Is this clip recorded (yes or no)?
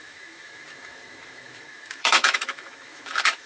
no